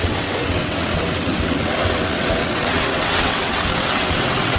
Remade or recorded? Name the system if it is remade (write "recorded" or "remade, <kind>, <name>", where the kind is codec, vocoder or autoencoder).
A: remade, vocoder, WaveNeXt